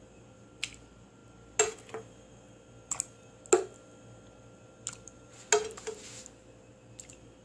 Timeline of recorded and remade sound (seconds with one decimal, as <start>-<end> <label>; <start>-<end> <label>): 0.0-7.4 recorded